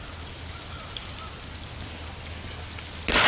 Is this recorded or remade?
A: recorded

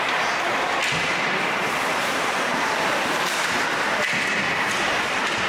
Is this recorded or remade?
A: remade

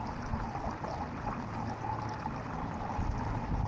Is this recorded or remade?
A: recorded